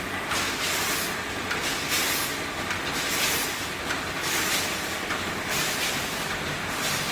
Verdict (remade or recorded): recorded